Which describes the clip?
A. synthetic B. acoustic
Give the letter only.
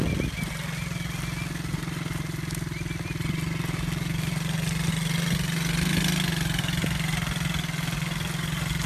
B